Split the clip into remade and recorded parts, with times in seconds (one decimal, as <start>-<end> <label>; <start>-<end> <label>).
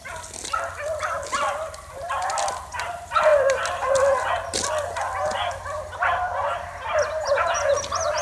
0.0-7.2 recorded; 7.2-7.7 remade; 7.7-8.2 recorded